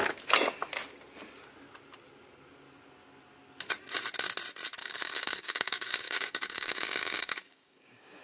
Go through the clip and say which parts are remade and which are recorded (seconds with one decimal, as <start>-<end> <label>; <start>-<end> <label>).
0.0-4.8 recorded; 4.8-8.2 remade